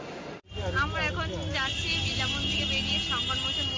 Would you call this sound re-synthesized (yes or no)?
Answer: no